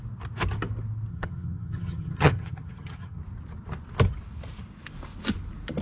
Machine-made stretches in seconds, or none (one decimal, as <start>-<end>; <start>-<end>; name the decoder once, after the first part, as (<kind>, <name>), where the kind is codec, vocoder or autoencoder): 1.1-3.2 (vocoder, HiFi-GAN)